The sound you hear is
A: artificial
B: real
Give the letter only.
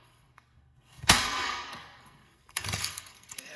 A